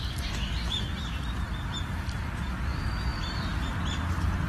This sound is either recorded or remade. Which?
recorded